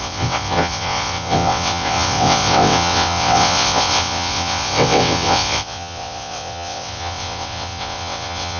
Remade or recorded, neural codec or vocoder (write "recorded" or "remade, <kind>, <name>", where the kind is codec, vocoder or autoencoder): remade, vocoder, WaveNeXt